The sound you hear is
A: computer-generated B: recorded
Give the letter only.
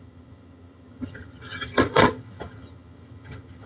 A